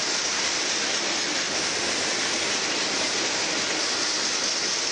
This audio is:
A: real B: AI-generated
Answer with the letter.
A